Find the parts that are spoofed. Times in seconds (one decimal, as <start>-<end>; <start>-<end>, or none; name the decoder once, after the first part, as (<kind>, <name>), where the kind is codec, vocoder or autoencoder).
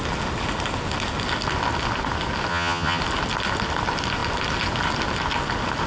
2.5-3.0 (vocoder, HiFi-GAN)